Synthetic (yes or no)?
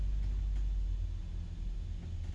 no